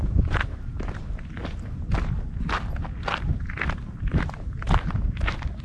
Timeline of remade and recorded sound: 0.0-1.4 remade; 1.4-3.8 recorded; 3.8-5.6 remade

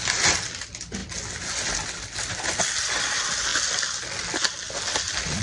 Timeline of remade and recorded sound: 0.0-5.4 recorded

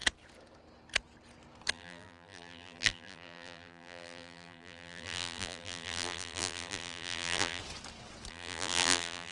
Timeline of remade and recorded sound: 0.0-1.7 recorded; 1.7-7.6 remade; 7.6-8.3 recorded; 8.3-9.3 remade

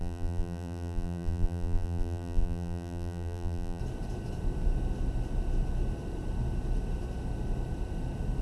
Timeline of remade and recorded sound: 0.0-3.8 remade; 3.8-8.4 recorded

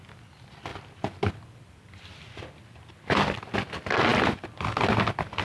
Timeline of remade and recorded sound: 0.0-0.7 recorded; 0.7-2.9 remade; 2.9-4.1 recorded; 4.1-5.0 remade; 5.0-5.4 recorded

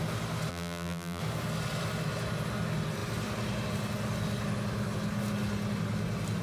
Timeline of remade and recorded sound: 0.0-0.5 recorded; 0.5-1.2 remade; 1.2-6.4 recorded

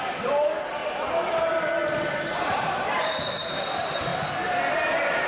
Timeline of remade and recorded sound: 0.0-0.8 remade; 0.8-1.4 recorded; 1.4-4.1 remade; 4.1-5.3 recorded

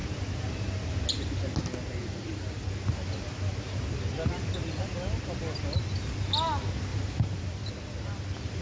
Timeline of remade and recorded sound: 0.0-2.0 recorded; 2.0-2.6 remade; 2.6-6.9 recorded; 6.9-7.7 remade; 7.7-8.6 recorded